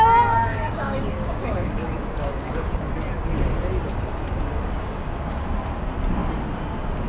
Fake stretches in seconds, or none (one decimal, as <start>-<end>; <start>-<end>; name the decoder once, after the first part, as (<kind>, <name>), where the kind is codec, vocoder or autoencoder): 0.5-2.9 (codec, DAC); 3.9-5.5

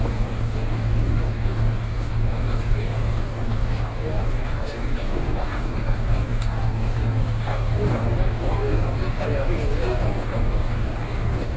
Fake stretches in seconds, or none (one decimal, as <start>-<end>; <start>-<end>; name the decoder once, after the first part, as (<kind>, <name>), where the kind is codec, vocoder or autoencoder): 0.0-11.6 (codec, DAC)

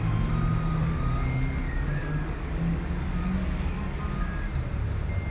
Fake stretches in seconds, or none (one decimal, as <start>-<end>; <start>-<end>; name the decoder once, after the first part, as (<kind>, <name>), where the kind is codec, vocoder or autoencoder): 0.8-4.0 (codec, DAC)

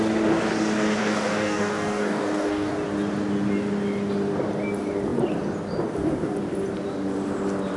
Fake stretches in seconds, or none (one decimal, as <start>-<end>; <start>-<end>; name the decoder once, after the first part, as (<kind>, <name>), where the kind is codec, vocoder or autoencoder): 1.0-2.7 (codec, DAC)

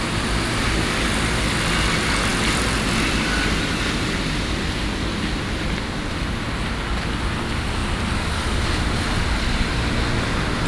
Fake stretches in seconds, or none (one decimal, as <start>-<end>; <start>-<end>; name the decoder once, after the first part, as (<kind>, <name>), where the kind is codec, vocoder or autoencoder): none

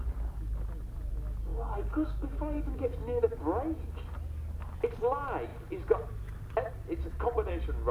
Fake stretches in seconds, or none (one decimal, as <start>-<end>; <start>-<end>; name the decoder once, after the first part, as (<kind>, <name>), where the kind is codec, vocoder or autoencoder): 1.5-3.2 (codec, DAC)

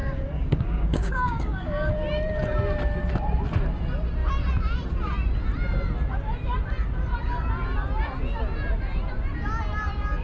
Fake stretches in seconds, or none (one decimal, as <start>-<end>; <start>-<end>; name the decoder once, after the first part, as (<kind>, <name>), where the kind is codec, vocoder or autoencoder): 0.0-1.9 (codec, DAC)